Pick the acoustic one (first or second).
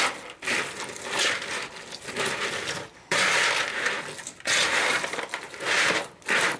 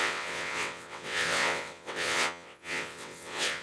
first